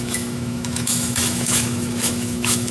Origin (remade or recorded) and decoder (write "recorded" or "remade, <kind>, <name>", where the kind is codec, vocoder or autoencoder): remade, autoencoder, DAC-VAE